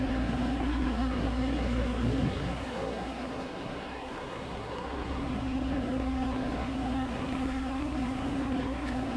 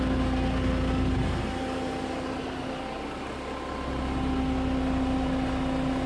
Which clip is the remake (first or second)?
first